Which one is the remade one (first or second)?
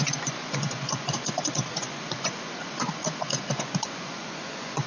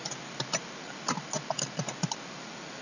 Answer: first